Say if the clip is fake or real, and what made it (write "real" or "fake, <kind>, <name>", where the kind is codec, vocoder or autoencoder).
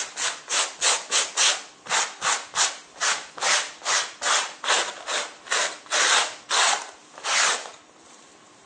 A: real